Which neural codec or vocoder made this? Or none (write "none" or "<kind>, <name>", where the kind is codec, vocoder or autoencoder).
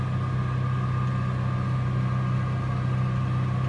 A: none